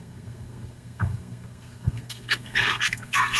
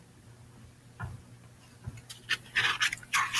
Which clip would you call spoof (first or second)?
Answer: first